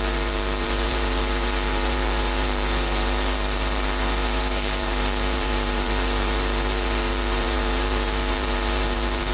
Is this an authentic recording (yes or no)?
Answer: no